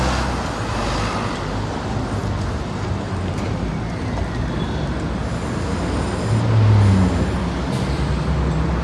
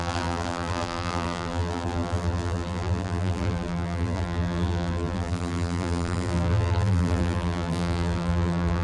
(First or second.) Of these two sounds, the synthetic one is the second